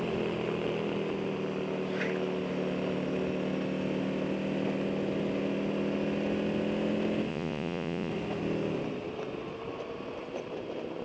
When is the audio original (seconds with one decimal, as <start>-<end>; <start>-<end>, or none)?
0.0-7.3; 8.1-11.0